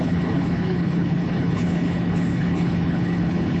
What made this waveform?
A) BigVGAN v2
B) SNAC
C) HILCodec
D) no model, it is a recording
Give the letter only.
C